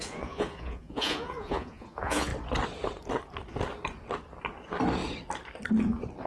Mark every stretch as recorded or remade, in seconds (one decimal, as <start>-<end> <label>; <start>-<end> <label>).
0.0-2.3 remade; 2.3-6.3 recorded